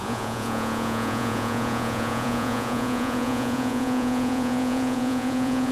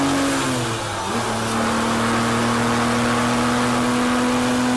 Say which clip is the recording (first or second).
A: second